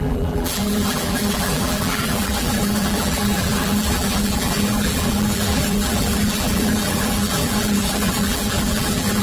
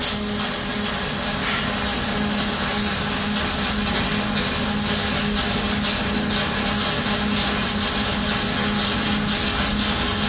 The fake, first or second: first